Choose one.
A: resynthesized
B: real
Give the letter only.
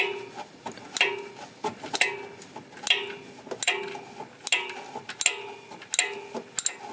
B